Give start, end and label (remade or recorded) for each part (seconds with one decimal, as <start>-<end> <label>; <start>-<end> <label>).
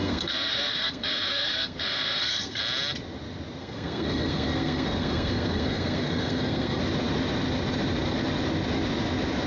0.0-2.6 remade; 2.6-3.6 recorded; 3.6-6.8 remade; 6.8-9.5 recorded